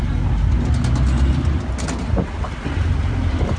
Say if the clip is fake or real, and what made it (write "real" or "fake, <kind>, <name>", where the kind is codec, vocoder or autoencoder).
real